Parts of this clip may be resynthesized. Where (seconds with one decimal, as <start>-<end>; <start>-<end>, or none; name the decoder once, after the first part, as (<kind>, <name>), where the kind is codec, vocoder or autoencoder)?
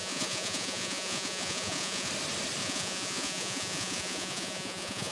0.0-2.1 (vocoder, Vocos); 2.6-5.1